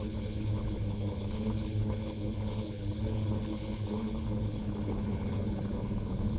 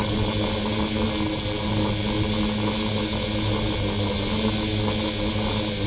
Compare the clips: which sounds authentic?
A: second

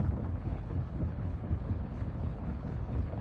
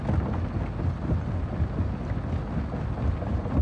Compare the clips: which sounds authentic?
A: second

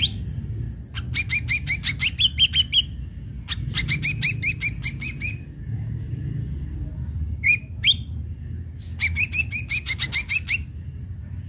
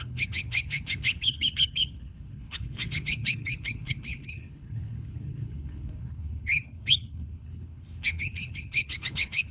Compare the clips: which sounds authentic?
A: first